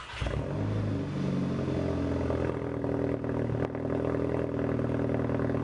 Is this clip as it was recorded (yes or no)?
yes